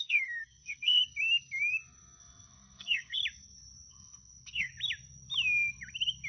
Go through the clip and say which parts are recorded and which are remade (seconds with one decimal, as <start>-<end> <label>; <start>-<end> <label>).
0.0-1.0 remade; 1.0-2.2 recorded; 2.2-3.2 remade; 3.2-3.9 recorded; 3.9-4.7 remade; 4.7-6.3 recorded